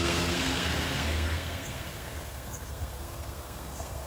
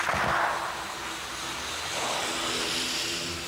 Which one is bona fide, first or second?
second